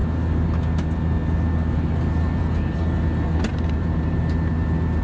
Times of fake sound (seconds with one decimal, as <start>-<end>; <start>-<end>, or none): 3.5-4.2